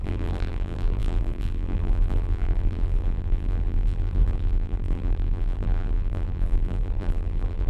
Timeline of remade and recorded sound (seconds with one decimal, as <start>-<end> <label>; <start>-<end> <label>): 0.0-7.7 remade